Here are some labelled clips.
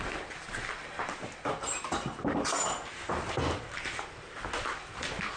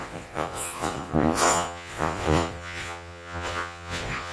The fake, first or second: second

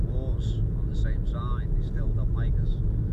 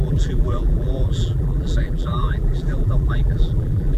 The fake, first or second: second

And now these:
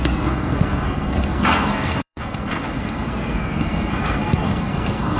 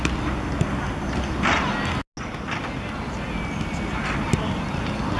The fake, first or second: first